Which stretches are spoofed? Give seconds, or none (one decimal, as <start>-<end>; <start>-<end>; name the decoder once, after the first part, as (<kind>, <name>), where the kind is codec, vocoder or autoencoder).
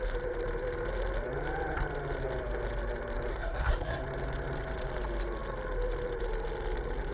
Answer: 3.3-4.0 (codec, SNAC)